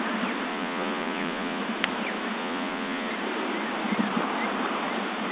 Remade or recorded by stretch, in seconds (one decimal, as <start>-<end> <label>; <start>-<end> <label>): 0.0-0.5 recorded; 0.5-1.6 remade; 1.6-2.4 recorded; 2.4-3.1 remade; 3.1-5.3 recorded